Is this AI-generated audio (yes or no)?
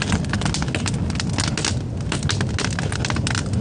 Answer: no